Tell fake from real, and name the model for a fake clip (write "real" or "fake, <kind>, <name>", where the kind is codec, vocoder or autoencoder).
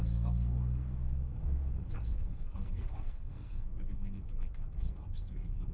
fake, codec, SNAC